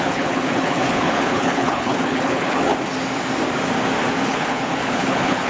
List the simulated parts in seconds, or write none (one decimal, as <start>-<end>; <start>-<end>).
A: 0.0-2.7; 4.3-5.5